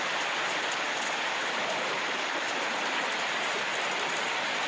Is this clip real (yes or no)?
yes